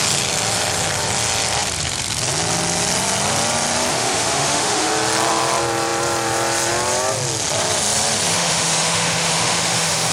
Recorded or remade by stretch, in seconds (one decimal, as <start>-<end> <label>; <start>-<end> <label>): 0.0-3.9 recorded; 3.9-4.9 remade; 4.9-8.3 recorded; 8.3-10.1 remade

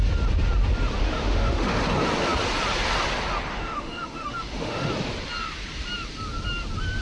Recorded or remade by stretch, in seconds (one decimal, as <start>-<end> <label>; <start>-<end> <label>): 0.0-1.0 recorded; 1.0-1.8 remade; 1.8-3.5 recorded; 3.5-4.9 remade; 4.9-7.0 recorded

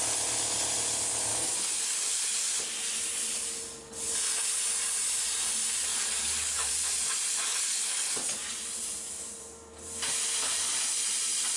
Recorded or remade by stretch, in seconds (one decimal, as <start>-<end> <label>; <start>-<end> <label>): 0.0-1.3 recorded; 1.3-2.0 remade; 2.0-5.9 recorded; 5.9-6.7 remade; 6.7-7.5 recorded; 7.5-8.1 remade; 8.1-11.6 recorded

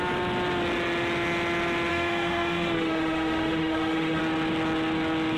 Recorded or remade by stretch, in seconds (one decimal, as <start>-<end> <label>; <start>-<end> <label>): 0.0-1.9 recorded; 1.9-4.2 remade; 4.2-5.4 recorded

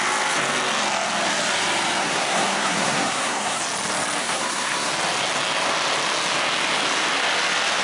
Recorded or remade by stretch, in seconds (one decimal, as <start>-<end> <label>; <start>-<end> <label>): 0.0-2.0 recorded; 2.0-3.6 remade; 3.6-4.2 recorded; 4.2-4.9 remade; 4.9-7.8 recorded

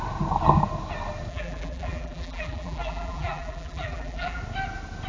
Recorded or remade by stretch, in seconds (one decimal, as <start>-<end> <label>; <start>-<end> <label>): 0.0-1.3 recorded; 1.3-4.4 remade; 4.4-5.1 recorded